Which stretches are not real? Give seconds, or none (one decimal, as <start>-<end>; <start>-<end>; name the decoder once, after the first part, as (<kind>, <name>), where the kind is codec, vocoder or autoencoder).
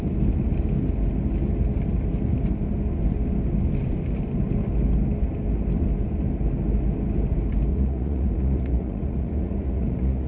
7.7-10.3 (vocoder, Vocos)